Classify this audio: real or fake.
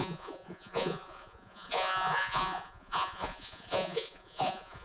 fake